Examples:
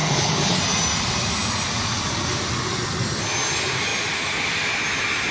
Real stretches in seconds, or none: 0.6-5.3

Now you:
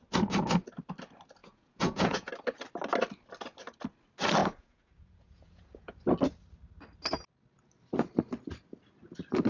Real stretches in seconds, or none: 0.0-1.4; 2.3-4.4; 5.9-9.5